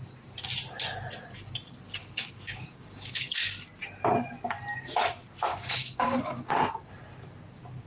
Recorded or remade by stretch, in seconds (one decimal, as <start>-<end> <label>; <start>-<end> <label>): 0.0-2.0 recorded; 2.0-3.4 remade; 3.4-5.5 recorded; 5.5-6.6 remade; 6.6-7.9 recorded